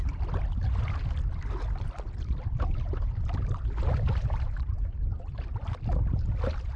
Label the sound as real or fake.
real